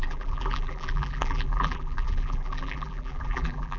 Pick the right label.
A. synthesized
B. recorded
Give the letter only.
A